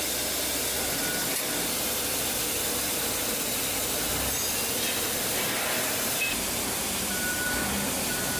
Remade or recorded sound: recorded